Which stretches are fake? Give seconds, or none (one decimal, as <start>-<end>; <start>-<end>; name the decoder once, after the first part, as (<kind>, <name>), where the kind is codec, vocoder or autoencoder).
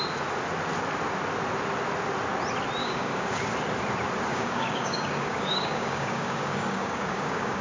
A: 2.8-3.4 (codec, DAC); 4.3-7.6